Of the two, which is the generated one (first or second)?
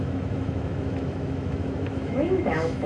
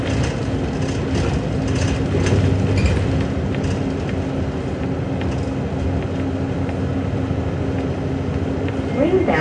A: first